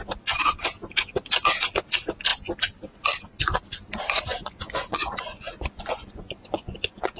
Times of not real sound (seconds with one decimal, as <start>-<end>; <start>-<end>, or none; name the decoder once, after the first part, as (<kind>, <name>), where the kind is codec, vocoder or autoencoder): 4.3-7.2 (vocoder, Vocos)